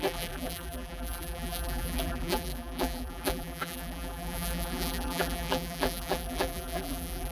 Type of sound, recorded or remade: remade